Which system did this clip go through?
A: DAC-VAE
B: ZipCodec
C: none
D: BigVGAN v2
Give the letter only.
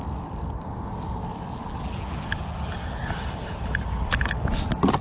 C